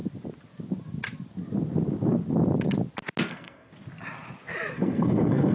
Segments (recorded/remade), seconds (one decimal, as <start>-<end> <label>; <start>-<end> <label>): 0.0-3.3 recorded; 3.3-3.7 remade; 3.7-4.7 recorded; 4.7-5.5 remade